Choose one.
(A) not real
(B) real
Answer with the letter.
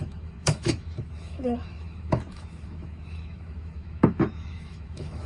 A